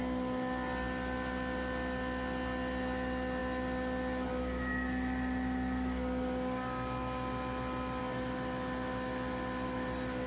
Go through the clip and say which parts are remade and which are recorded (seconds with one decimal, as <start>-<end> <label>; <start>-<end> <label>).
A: 0.0-10.3 recorded